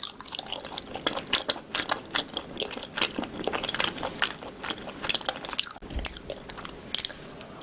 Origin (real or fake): real